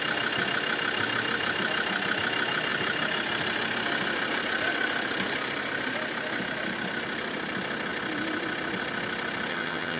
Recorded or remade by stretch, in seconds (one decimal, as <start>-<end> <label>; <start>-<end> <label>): 0.0-9.5 recorded; 9.5-10.0 remade